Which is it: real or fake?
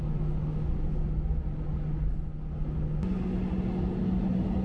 real